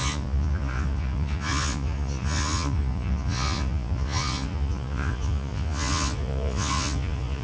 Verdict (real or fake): fake